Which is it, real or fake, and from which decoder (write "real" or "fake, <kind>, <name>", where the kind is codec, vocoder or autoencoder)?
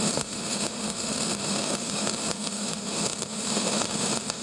fake, autoencoder, DAC-VAE